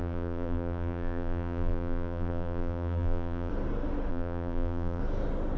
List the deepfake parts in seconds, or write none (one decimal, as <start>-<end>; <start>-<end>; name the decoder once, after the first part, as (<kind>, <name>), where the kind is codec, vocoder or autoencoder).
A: 0.0-3.5 (vocoder, BigVGAN v2); 4.1-5.0